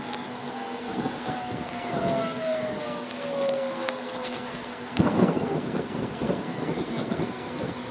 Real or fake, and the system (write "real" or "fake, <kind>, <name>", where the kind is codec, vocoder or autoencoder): fake, codec, SNAC